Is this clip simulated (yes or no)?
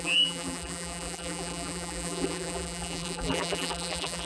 yes